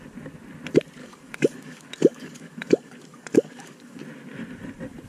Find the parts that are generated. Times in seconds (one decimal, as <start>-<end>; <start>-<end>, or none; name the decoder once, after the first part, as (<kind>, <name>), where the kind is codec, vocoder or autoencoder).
1.0-4.0 (codec, DAC)